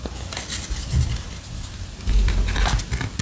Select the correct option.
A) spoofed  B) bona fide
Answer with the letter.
B